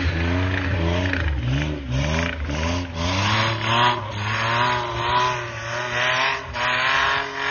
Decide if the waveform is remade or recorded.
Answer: recorded